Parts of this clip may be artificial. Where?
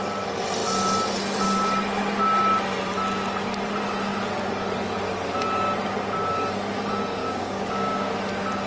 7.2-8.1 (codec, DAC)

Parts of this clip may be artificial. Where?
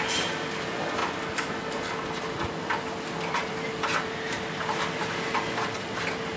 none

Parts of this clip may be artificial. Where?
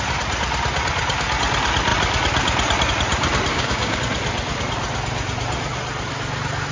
3.5-4.0 (codec, DAC)